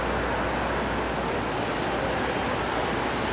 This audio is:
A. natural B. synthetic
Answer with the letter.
A